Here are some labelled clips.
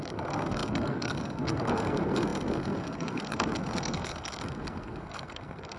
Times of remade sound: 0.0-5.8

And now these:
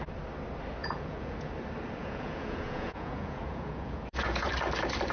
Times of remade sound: 0.8-1.5; 2.0-4.5